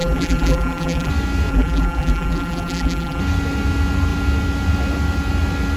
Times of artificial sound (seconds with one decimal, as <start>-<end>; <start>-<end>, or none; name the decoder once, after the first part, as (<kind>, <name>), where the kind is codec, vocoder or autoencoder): 0.0-1.1 (vocoder, BigVGAN v2); 1.5-3.2